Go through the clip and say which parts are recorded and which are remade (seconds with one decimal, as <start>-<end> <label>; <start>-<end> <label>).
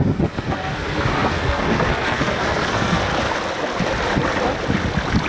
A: 0.0-3.1 remade; 3.1-5.3 recorded